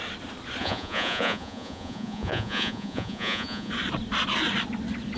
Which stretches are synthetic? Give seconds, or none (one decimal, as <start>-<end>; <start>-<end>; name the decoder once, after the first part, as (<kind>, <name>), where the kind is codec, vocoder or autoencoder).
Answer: 0.6-3.7 (vocoder, Vocos)